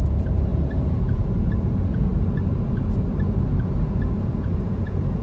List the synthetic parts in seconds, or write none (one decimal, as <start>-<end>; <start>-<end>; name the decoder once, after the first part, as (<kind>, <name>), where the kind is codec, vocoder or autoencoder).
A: 0.0-2.1 (vocoder, Vocos); 3.7-5.2